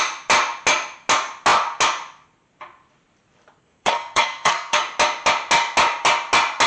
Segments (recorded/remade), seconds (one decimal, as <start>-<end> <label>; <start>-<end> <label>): 0.0-3.6 recorded; 3.6-4.8 remade; 4.8-6.7 recorded